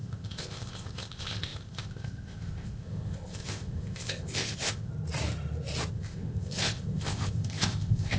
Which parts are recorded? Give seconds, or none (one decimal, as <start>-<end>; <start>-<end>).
4.9-5.9